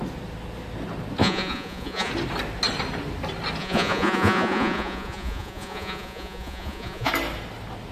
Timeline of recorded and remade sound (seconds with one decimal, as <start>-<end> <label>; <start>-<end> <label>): 0.0-1.2 recorded; 1.2-2.1 remade; 2.1-3.6 recorded; 3.6-7.1 remade; 7.1-7.9 recorded